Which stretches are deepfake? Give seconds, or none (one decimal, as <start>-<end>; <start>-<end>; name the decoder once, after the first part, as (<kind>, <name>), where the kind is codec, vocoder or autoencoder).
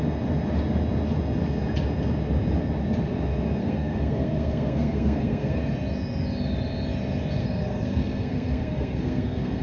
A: 3.6-5.6 (codec, SNAC); 7.4-9.6